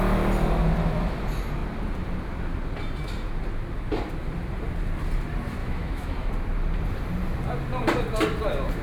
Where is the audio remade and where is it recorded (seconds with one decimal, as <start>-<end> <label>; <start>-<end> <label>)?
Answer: 0.0-5.6 recorded; 5.6-6.3 remade; 6.3-8.8 recorded

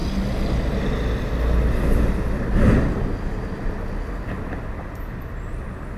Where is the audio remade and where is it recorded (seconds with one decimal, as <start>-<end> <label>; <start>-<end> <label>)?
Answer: 0.0-6.0 recorded

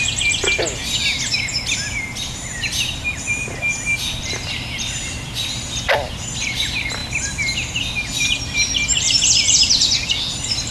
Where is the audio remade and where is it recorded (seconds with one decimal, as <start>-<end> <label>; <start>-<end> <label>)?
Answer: 0.0-10.7 recorded

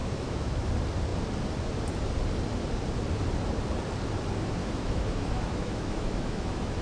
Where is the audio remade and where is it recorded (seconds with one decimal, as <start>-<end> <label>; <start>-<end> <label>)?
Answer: 0.0-0.7 remade; 0.7-4.6 recorded; 4.6-6.8 remade

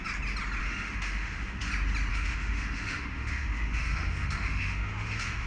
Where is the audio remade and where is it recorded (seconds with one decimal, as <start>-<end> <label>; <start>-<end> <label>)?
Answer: 0.0-0.6 recorded; 0.6-1.7 remade; 1.7-2.1 recorded; 2.1-5.5 remade

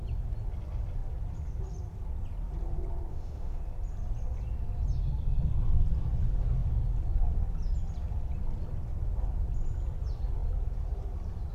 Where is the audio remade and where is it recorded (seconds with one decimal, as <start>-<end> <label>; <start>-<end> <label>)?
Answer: 0.0-3.1 recorded; 3.1-3.6 remade; 3.6-11.5 recorded

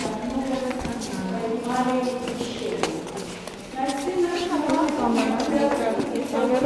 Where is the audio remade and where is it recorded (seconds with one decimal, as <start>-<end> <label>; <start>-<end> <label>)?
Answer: 0.0-6.7 recorded

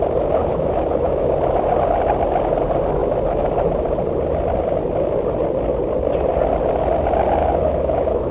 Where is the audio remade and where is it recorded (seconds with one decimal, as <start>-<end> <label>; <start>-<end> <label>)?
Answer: 0.0-0.4 recorded; 0.4-1.3 remade; 1.3-7.4 recorded; 7.4-8.3 remade